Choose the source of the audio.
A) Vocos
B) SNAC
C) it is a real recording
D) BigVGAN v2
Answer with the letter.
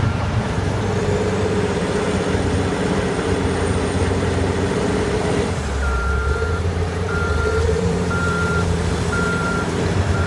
D